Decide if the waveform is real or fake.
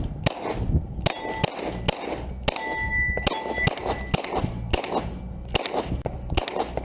real